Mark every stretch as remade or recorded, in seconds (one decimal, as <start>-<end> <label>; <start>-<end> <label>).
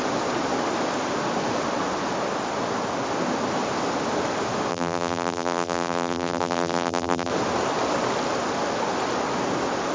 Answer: 0.0-4.7 recorded; 4.7-7.3 remade; 7.3-9.9 recorded